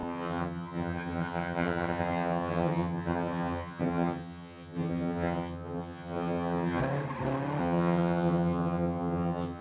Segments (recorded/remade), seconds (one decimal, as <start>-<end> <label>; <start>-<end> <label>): 0.0-6.8 remade; 6.8-7.6 recorded; 7.6-9.6 remade